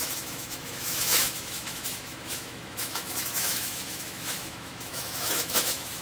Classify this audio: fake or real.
fake